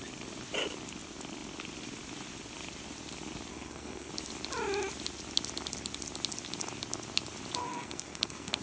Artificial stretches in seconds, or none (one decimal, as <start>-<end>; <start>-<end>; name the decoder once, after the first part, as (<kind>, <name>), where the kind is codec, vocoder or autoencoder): 3.5-4.1 (codec, SNAC); 7.6-8.6